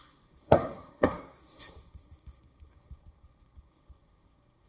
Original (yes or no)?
no